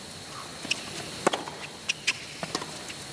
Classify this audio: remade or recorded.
recorded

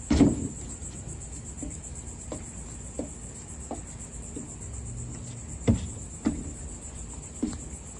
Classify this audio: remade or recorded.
recorded